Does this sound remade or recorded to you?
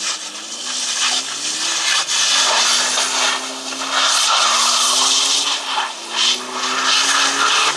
recorded